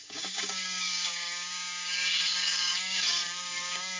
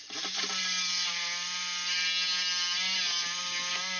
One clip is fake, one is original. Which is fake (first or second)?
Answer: first